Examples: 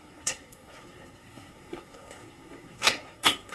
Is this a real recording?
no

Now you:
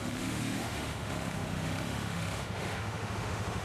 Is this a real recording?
no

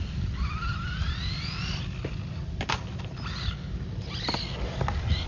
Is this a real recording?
yes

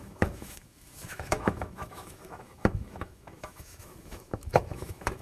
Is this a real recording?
no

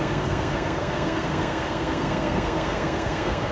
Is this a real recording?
no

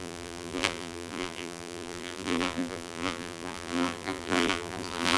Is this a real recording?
no